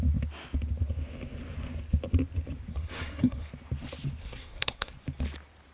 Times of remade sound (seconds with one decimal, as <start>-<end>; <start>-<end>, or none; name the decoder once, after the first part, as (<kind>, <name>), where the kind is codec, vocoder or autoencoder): 2.7-3.5 (codec, SNAC); 4.2-4.9